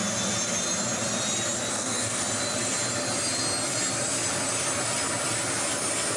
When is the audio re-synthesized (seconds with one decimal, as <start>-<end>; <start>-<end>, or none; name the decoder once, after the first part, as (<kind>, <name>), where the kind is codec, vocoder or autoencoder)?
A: 1.7-2.2 (codec, DAC)